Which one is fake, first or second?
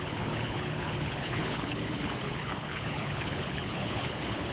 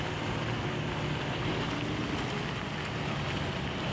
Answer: first